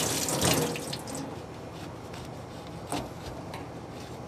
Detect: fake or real real